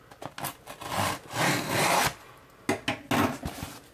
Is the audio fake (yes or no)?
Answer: no